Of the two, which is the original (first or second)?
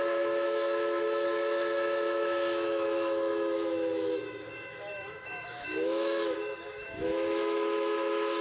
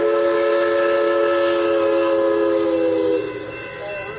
second